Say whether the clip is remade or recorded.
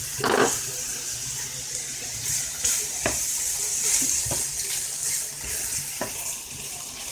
recorded